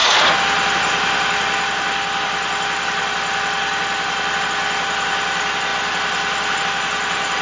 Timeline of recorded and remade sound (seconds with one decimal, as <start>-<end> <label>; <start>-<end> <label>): 0.0-7.4 recorded